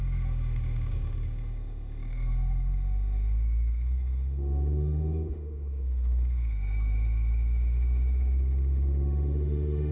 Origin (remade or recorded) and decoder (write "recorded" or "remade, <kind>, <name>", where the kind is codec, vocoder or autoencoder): remade, autoencoder, DAC-VAE